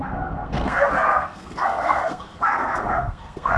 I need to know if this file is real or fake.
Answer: fake